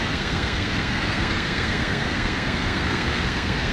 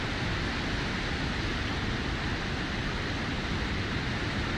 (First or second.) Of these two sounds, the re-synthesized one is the first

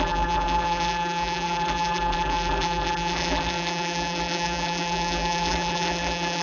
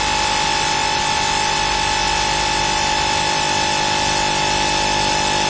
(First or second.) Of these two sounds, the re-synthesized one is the first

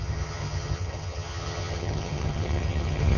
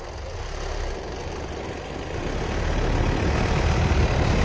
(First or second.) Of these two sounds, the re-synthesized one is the first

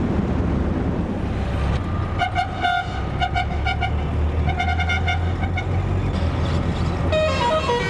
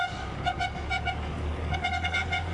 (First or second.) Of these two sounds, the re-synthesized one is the second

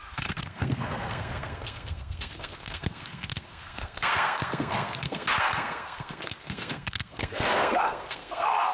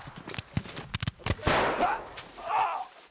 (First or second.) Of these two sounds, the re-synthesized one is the first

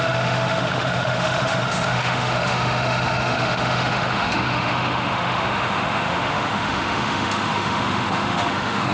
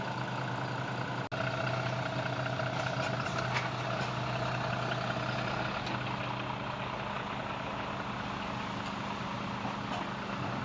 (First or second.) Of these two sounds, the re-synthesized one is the first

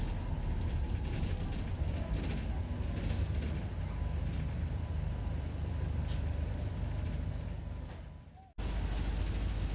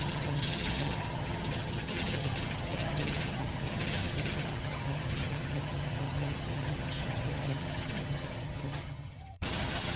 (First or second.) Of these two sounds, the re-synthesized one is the second